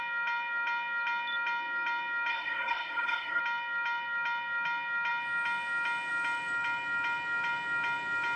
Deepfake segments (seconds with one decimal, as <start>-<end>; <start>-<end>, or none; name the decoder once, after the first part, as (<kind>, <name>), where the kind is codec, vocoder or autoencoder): 2.3-3.4 (codec, SNAC)